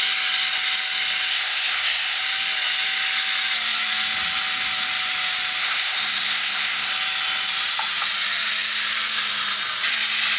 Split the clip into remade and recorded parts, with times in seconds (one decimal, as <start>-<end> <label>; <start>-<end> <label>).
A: 0.0-1.3 recorded; 1.3-2.2 remade; 2.2-5.6 recorded; 5.6-6.9 remade; 6.9-10.4 recorded